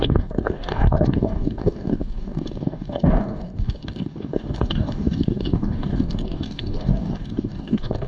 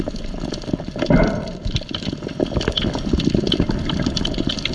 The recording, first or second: second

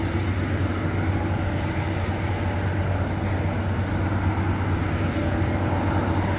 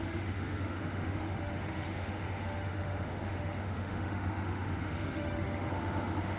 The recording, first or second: first